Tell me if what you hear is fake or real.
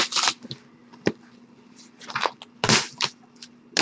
real